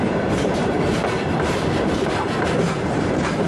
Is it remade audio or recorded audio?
remade